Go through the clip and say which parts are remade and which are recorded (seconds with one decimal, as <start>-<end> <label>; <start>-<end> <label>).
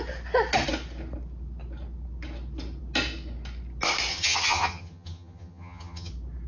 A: 0.0-4.1 recorded; 4.1-6.1 remade; 6.1-6.5 recorded